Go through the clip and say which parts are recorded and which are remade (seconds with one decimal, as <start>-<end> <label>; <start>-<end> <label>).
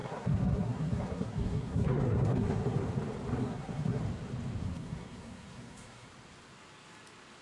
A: 0.0-2.8 remade; 2.8-3.4 recorded; 3.4-4.0 remade; 4.0-4.6 recorded; 4.6-6.1 remade; 6.1-7.4 recorded